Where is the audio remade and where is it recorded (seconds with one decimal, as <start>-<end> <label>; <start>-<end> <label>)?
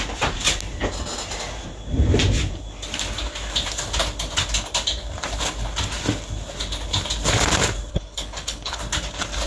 0.0-7.9 recorded; 7.9-8.8 remade; 8.8-9.5 recorded